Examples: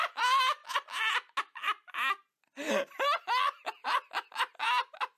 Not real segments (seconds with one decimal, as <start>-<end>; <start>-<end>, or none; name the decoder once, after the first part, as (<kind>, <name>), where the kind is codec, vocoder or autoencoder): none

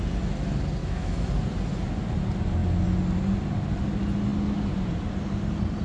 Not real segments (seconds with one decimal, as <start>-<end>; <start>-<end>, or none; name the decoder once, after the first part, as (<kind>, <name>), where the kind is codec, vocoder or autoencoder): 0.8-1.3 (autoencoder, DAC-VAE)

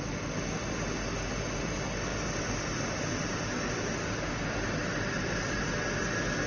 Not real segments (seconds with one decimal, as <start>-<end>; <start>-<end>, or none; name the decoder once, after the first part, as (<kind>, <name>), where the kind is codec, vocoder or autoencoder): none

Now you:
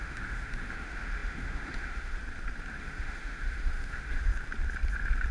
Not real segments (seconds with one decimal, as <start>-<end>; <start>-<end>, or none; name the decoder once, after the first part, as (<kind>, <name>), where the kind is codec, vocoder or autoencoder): 0.0-2.2 (autoencoder, DAC-VAE); 2.8-4.3